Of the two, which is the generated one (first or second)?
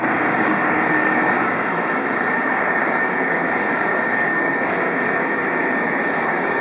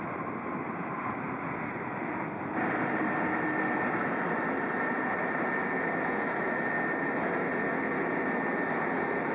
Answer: first